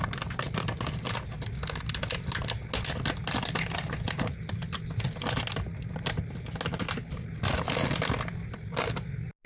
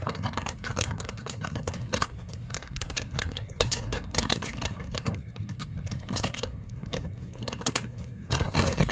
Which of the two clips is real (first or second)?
first